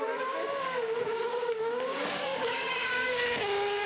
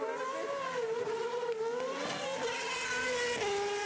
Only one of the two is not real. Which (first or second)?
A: first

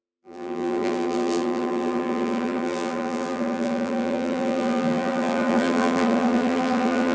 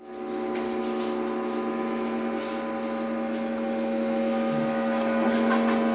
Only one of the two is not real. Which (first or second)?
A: first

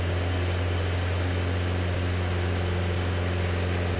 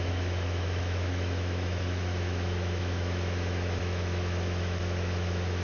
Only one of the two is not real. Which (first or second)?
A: second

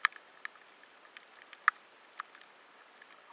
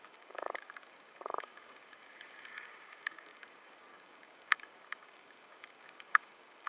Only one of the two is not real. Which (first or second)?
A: second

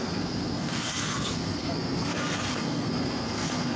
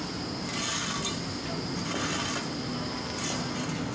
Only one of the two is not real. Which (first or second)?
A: first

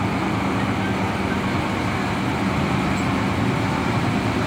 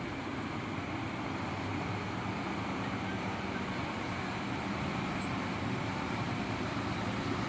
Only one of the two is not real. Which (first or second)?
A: second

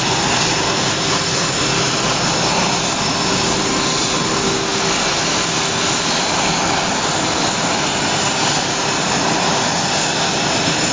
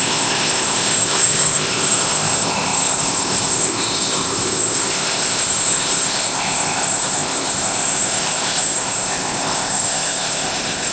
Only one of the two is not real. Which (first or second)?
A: second